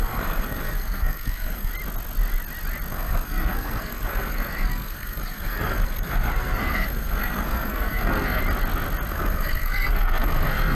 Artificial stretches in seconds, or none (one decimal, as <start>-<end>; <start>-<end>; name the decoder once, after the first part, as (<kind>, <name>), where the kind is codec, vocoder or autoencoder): 0.0-1.7 (codec, SNAC); 2.9-8.4; 9.1-10.7